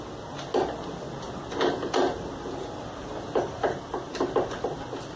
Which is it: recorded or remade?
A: recorded